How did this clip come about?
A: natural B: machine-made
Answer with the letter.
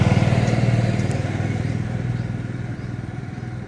A